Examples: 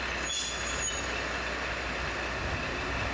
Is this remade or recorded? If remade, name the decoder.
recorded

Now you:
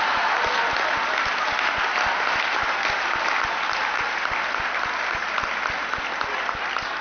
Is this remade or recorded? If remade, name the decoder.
recorded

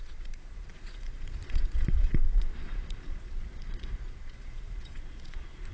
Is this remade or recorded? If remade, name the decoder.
remade, vocoder, Vocos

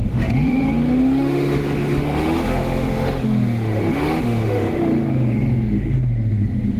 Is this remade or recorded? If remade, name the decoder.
remade, autoencoder, DAC-VAE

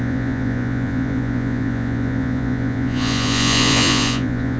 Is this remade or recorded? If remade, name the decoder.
remade, vocoder, Vocos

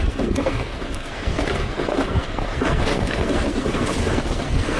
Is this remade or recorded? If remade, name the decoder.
remade, codec, SNAC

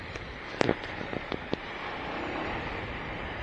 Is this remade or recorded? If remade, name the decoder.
remade, vocoder, BigVGAN v2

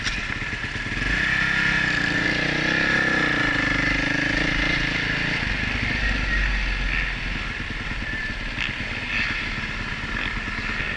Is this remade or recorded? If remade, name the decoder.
recorded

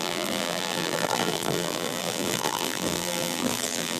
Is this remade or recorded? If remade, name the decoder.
remade, vocoder, BigVGAN v2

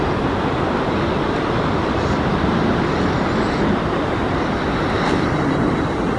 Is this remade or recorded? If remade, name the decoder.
recorded